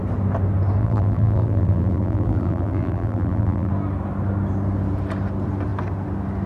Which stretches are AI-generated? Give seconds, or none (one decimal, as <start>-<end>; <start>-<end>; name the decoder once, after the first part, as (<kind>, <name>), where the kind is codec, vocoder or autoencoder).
0.8-3.7 (vocoder, BigVGAN v2)